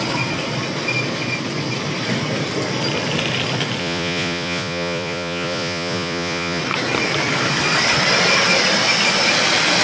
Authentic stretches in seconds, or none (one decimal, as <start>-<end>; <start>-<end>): 0.0-3.8; 6.6-9.8